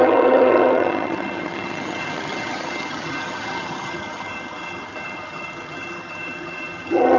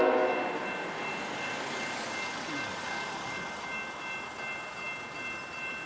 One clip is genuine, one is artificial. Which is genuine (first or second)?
second